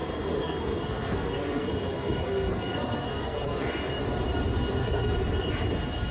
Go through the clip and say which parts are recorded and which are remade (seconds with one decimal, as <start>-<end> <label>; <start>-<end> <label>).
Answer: 0.0-3.7 remade; 3.7-4.8 recorded; 4.8-5.5 remade; 5.5-6.1 recorded